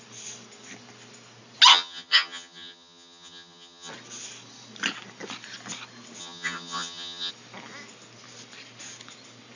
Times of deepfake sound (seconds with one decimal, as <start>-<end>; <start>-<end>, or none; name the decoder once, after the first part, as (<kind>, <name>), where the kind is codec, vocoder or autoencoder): 1.7-3.9 (vocoder, HiFi-GAN); 6.2-7.3